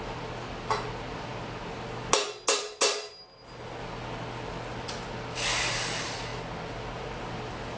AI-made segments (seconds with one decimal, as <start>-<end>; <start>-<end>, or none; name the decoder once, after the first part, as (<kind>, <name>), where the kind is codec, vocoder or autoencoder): none